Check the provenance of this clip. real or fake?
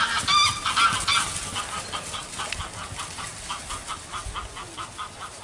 real